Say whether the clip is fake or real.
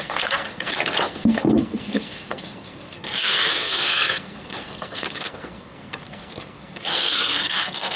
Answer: fake